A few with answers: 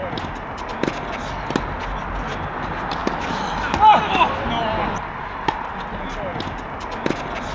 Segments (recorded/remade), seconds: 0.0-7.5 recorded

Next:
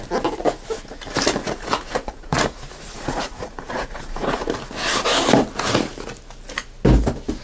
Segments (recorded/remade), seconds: 0.0-1.4 recorded; 1.4-4.5 remade; 4.5-7.4 recorded

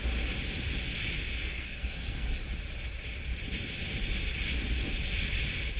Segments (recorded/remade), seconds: 0.0-1.4 recorded; 1.4-2.4 remade; 2.4-5.8 recorded

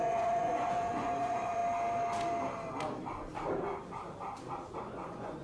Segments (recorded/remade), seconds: 0.0-1.6 remade; 1.6-4.8 recorded; 4.8-5.4 remade

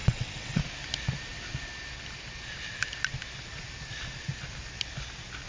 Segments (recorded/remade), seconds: 0.0-0.6 remade; 0.6-5.5 recorded

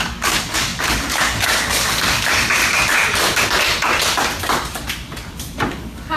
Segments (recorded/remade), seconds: 0.0-2.6 remade; 2.6-5.7 recorded; 5.7-6.2 remade

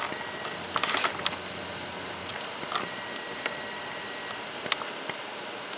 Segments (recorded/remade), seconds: 0.0-5.8 recorded